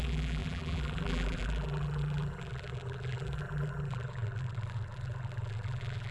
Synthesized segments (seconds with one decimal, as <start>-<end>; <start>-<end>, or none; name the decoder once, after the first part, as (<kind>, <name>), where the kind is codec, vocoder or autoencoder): 0.0-6.1 (vocoder, BigVGAN v2)